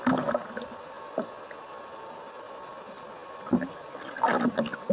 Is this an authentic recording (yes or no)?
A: yes